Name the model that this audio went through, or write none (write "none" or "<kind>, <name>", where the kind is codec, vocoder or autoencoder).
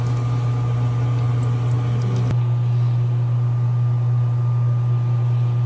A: none